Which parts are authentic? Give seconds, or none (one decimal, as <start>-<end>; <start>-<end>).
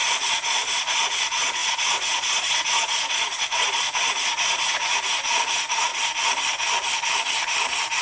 5.9-8.0